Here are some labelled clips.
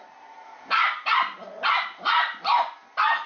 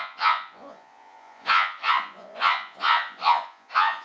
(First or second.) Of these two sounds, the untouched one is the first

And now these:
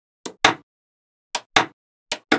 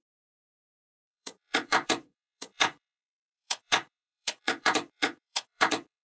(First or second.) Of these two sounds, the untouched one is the first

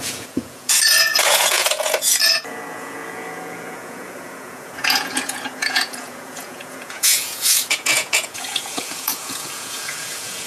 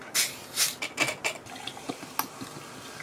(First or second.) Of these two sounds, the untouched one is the second